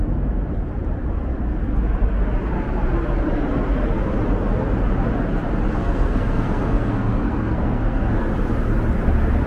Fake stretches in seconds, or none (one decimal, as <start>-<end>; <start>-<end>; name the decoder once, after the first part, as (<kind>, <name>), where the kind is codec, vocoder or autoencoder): 5.8-8.3 (codec, SNAC)